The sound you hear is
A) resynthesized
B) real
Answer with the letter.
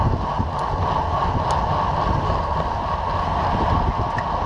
B